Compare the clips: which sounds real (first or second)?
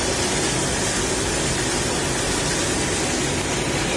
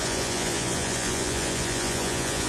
first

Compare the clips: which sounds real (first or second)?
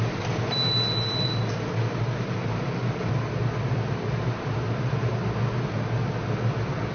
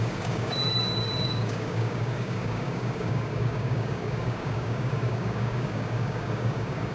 first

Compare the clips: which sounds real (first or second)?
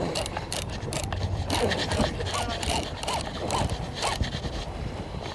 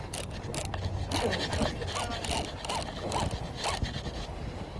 second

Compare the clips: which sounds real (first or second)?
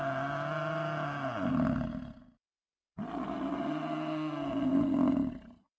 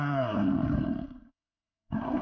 first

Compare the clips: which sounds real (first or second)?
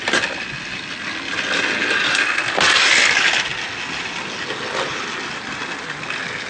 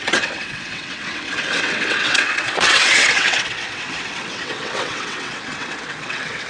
first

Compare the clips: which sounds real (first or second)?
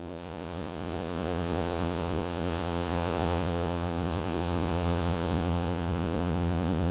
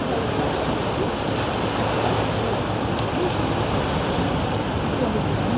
second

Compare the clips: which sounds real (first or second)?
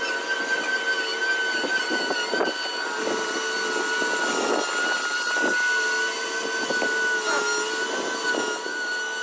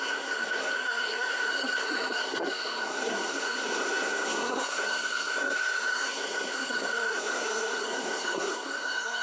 first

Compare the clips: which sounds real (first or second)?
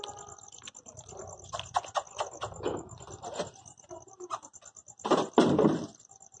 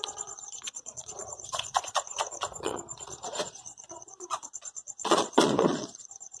first